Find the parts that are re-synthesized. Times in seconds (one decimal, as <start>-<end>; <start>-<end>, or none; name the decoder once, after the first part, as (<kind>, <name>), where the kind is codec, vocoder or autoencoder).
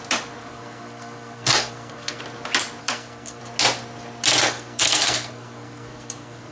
0.4-2.2 (codec, SNAC); 2.8-3.4; 4.4-6.5